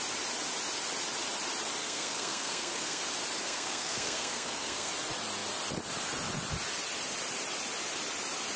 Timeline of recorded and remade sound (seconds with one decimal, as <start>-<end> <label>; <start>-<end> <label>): 0.0-1.8 recorded; 1.8-3.0 remade; 3.0-3.4 recorded; 3.4-4.9 remade; 4.9-8.6 recorded